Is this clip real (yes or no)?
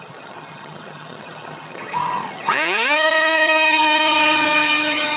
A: no